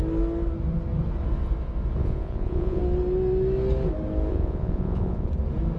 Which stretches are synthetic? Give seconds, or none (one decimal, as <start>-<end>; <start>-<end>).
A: 2.0-2.8; 4.3-5.3